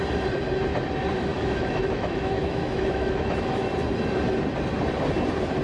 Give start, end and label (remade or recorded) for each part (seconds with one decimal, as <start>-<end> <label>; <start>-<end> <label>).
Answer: 0.0-1.3 recorded; 1.3-3.7 remade; 3.7-5.6 recorded

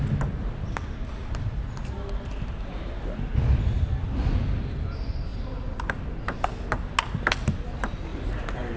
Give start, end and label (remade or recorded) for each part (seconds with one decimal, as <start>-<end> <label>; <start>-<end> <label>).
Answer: 0.0-8.8 recorded

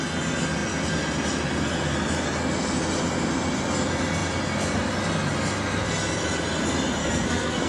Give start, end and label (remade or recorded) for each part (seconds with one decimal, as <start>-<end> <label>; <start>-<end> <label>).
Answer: 0.0-7.0 recorded; 7.0-7.7 remade

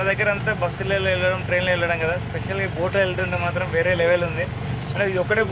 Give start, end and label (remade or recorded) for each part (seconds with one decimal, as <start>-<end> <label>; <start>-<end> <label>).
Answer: 0.0-3.2 recorded; 3.2-5.5 remade

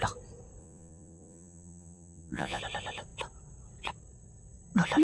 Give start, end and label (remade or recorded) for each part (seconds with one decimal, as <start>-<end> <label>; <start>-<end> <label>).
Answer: 0.0-0.6 recorded; 0.6-2.6 remade; 2.6-5.0 recorded

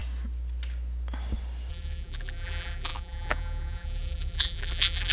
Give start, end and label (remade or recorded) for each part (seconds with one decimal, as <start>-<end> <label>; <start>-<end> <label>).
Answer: 0.0-1.7 recorded; 1.7-5.1 remade